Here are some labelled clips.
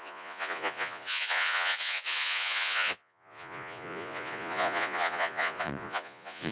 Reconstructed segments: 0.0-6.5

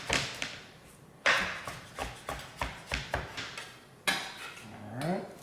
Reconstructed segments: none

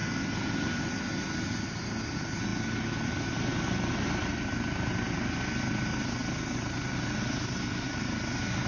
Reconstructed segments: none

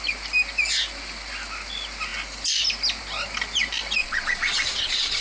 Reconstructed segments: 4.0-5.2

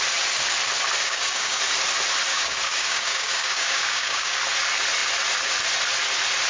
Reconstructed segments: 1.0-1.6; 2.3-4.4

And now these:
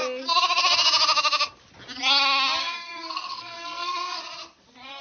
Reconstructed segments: 2.6-4.2

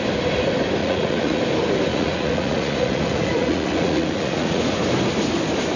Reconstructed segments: 0.8-1.4; 1.9-4.6

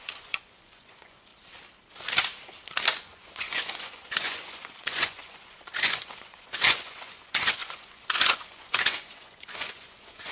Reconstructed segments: 0.0-1.3; 3.0-10.3